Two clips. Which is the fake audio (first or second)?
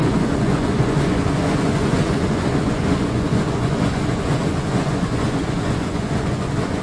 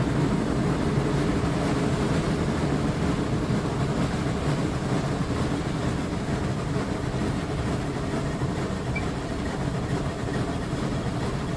first